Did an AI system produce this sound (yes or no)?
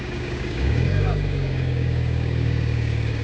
yes